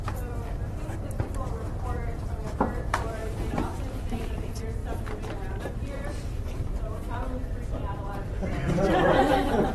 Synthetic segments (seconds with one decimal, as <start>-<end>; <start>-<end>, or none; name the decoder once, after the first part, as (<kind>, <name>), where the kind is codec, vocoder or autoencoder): 0.0-4.8 (vocoder, BigVGAN v2); 5.5-9.7